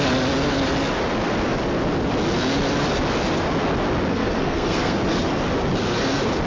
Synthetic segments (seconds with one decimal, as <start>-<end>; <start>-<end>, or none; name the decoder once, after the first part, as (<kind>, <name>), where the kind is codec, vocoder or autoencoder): 4.1-5.0 (codec, SNAC)